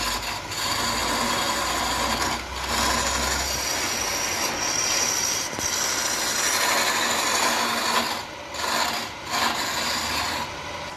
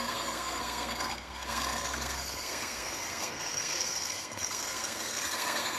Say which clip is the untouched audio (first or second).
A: first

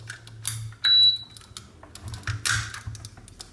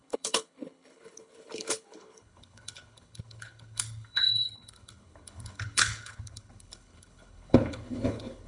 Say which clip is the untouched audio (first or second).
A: first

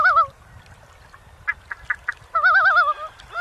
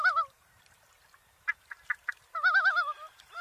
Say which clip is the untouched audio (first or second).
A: first